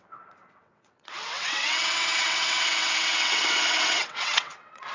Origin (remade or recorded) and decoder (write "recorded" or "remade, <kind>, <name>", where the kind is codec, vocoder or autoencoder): remade, vocoder, WaveNeXt